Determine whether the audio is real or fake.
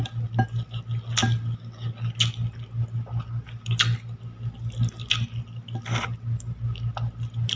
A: real